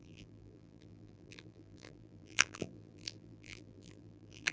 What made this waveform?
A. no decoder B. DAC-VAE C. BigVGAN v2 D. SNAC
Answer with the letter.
C